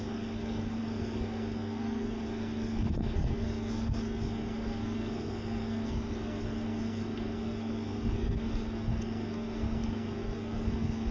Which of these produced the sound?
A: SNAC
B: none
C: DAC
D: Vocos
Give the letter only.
A